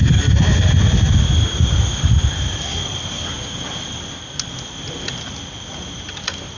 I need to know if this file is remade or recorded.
recorded